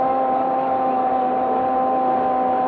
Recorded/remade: recorded